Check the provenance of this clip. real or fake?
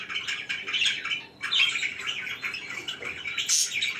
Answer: real